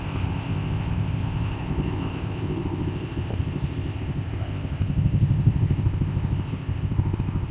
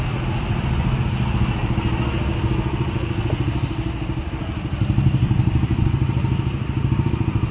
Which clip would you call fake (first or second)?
first